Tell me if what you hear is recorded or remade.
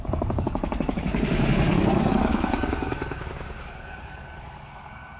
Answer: remade